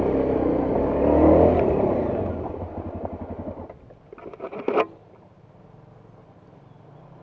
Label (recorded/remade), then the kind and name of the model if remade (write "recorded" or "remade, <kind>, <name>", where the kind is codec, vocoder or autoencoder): recorded